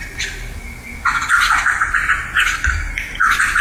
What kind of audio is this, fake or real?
real